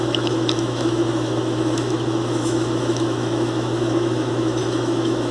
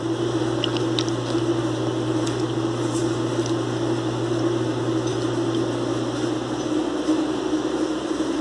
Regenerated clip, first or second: first